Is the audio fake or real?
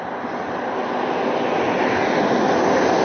real